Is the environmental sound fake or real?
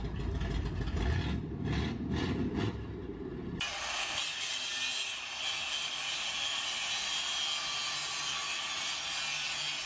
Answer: real